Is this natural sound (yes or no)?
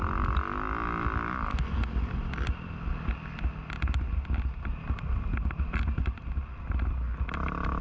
yes